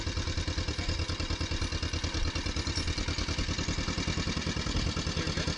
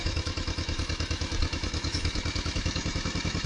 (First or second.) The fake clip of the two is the second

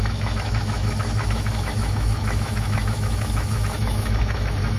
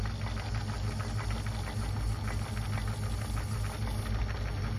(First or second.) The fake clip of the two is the first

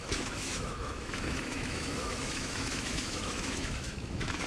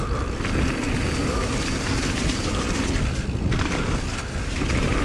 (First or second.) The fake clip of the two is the first